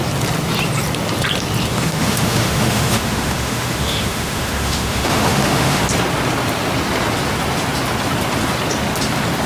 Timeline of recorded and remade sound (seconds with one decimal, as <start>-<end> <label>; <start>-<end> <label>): 0.0-1.7 recorded; 1.7-5.8 remade; 5.8-9.5 recorded